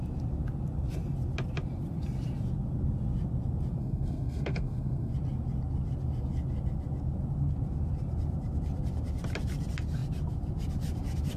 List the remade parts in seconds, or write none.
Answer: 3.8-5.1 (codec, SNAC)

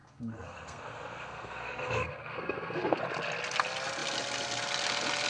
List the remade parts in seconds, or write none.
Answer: 0.0-3.0 (codec, SNAC)